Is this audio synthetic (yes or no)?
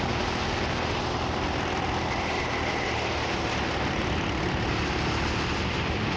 no